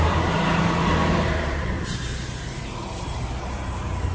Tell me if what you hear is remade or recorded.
remade